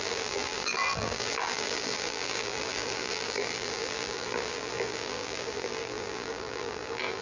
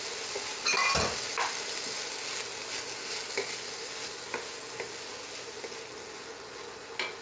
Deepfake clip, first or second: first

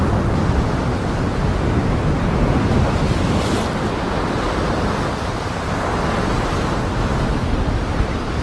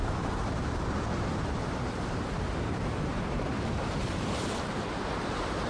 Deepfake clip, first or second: second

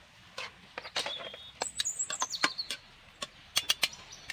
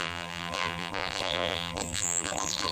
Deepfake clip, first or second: second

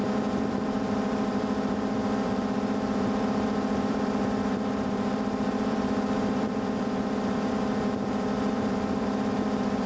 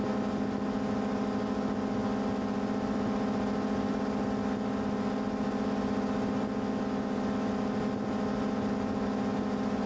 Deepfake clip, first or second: first